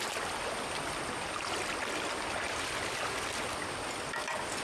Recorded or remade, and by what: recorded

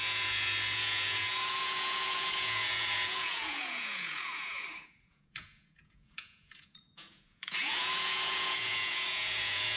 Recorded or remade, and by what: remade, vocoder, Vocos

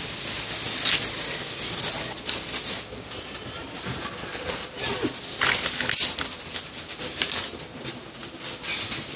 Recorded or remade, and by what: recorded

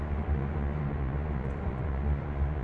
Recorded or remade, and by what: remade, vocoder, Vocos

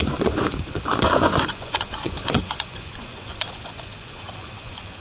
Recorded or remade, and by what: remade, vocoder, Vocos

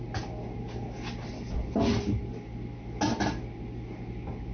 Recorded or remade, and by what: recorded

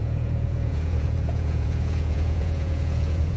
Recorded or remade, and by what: remade, vocoder, Vocos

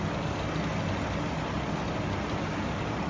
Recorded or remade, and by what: recorded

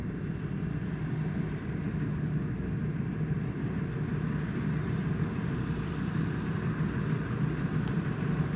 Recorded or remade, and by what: recorded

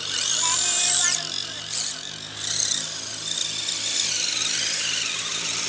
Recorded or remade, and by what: recorded